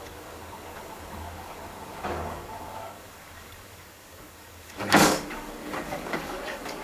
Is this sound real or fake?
fake